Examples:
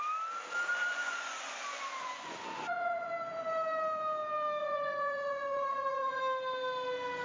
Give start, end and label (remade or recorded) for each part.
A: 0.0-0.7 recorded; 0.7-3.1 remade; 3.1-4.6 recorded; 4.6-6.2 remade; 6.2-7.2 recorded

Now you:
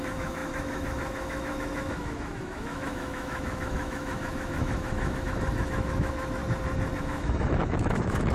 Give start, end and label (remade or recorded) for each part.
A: 0.0-6.4 remade; 6.4-7.0 recorded; 7.0-8.3 remade

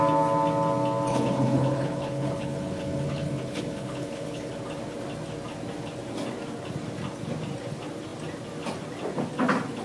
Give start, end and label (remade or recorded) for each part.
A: 0.0-1.1 recorded; 1.1-4.5 remade; 4.5-9.8 recorded

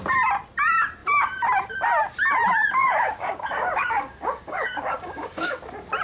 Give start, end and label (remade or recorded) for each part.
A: 0.0-2.8 recorded; 2.8-5.6 remade; 5.6-6.0 recorded

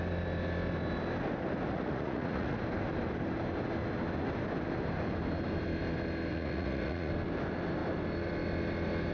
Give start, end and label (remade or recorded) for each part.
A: 0.0-1.7 recorded; 1.7-2.6 remade; 2.6-6.3 recorded; 6.3-7.1 remade; 7.1-9.1 recorded

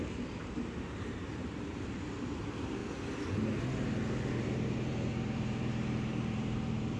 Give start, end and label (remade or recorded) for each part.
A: 0.0-2.8 remade; 2.8-4.4 recorded; 4.4-7.0 remade

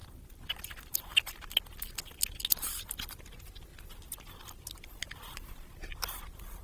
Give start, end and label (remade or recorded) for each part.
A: 0.0-2.5 recorded; 2.5-3.7 remade; 3.7-4.5 recorded; 4.5-6.6 remade